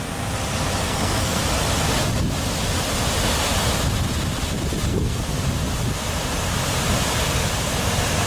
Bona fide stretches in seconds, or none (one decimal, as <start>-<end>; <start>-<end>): 0.0-0.8; 1.4-4.9; 5.4-8.3